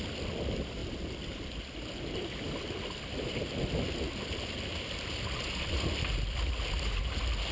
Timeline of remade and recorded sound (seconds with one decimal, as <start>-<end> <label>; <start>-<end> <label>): 0.0-7.5 recorded